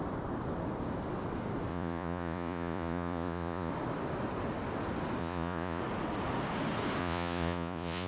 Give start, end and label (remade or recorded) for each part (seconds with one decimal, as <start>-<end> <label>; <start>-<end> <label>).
0.0-1.7 recorded; 1.7-3.7 remade; 3.7-5.2 recorded; 5.2-5.8 remade; 5.8-7.0 recorded; 7.0-8.1 remade